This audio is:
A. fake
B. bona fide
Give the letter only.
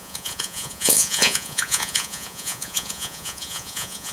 A